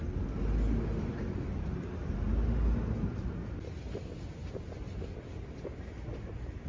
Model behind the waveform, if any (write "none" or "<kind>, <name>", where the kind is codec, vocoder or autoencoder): none